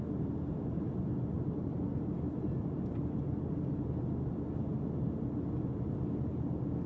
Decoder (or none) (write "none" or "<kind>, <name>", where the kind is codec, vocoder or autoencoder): none